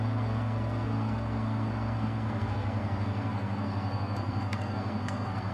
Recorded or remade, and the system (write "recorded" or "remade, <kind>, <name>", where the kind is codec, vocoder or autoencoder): remade, codec, SNAC